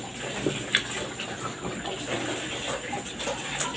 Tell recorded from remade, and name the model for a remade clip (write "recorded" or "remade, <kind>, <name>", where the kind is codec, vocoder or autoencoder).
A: recorded